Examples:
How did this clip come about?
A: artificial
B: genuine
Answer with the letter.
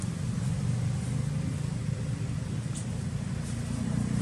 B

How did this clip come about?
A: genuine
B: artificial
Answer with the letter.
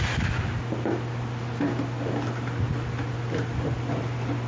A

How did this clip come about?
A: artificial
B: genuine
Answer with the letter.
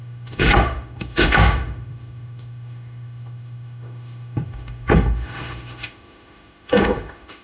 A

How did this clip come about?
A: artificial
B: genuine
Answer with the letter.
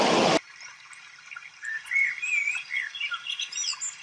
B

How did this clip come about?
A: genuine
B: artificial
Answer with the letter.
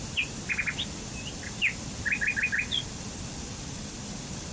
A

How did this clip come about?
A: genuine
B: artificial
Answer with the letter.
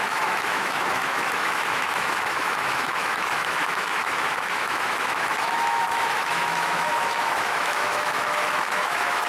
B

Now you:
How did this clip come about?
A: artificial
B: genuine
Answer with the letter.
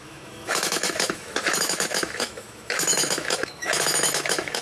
A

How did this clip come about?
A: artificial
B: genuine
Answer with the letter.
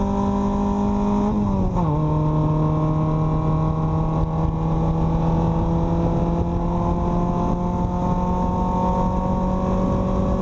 B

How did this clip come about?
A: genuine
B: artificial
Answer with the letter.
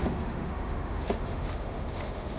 B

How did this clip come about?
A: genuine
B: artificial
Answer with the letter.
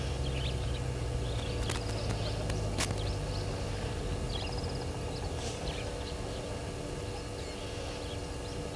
A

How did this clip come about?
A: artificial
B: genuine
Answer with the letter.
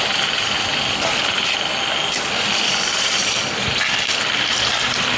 B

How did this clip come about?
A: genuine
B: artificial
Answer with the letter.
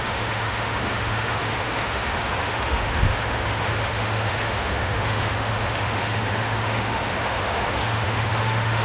B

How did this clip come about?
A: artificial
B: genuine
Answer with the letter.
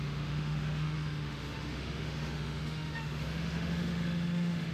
A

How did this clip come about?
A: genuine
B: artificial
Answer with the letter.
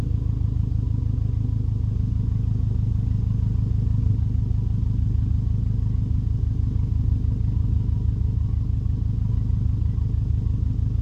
A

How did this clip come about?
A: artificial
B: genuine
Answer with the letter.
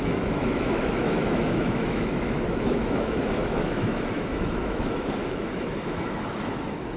A